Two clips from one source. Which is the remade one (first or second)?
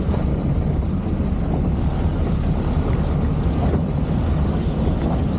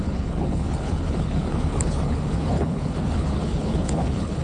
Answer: second